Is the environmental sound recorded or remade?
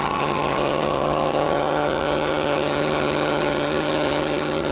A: remade